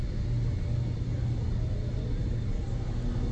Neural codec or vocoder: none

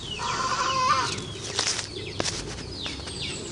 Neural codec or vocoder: none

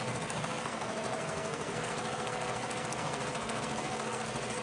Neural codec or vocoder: codec, SNAC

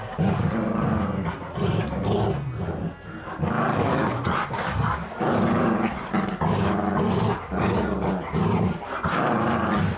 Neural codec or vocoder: none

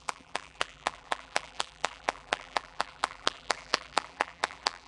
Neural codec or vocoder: vocoder, BigVGAN v2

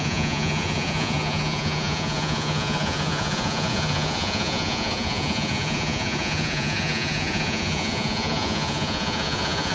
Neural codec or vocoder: vocoder, Vocos